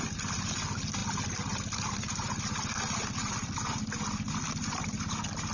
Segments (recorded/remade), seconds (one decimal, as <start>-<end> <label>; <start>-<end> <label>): 0.0-5.5 recorded